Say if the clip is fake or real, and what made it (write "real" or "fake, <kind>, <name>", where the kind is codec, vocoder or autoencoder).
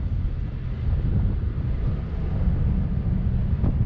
real